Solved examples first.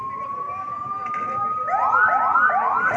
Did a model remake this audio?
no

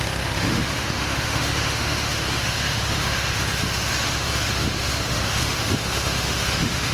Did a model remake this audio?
yes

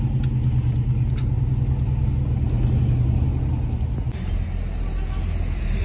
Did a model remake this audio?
no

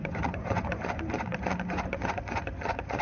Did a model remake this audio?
yes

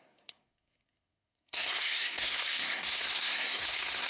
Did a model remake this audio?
yes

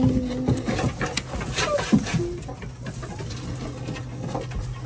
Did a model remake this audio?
no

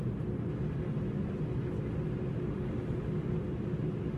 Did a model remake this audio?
no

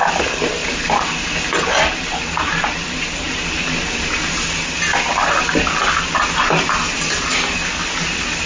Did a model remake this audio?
no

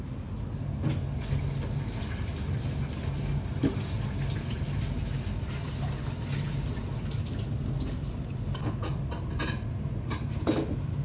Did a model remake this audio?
no